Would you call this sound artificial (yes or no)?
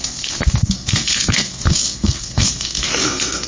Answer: yes